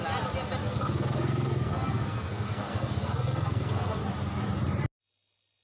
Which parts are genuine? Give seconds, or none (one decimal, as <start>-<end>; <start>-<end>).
0.0-0.6; 4.0-5.6